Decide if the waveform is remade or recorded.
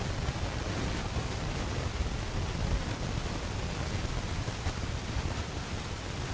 recorded